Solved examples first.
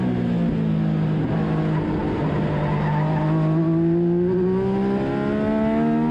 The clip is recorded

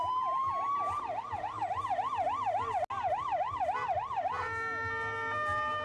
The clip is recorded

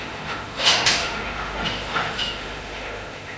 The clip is remade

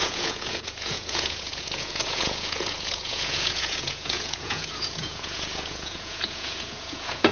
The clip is remade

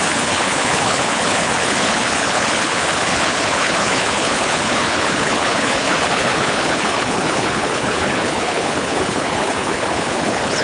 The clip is remade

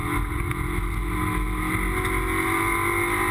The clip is recorded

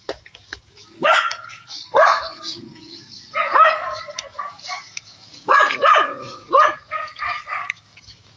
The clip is remade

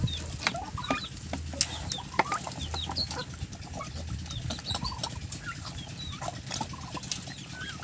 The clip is recorded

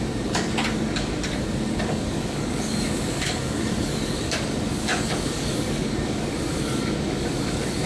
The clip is remade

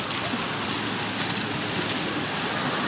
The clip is recorded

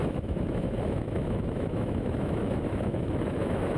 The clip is remade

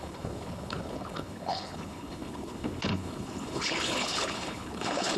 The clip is remade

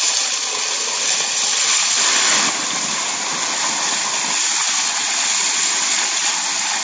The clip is recorded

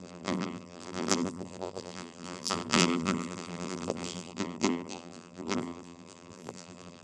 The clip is remade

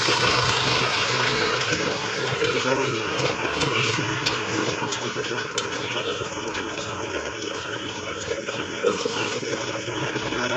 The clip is remade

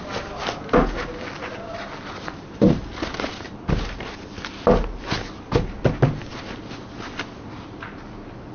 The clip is recorded